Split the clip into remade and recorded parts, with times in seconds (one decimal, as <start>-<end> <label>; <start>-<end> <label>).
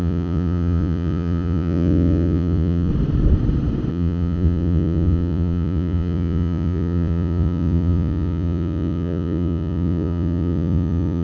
0.0-2.9 remade; 2.9-3.9 recorded; 3.9-11.2 remade